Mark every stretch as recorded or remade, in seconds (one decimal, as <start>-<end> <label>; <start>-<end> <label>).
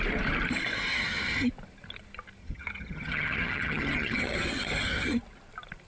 0.0-0.9 recorded; 0.9-1.5 remade; 1.5-2.4 recorded; 2.4-5.2 remade; 5.2-5.9 recorded